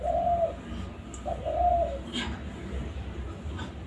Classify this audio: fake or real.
real